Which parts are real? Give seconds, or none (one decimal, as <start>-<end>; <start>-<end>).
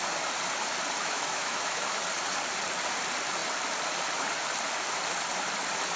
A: 0.0-1.0; 2.0-6.0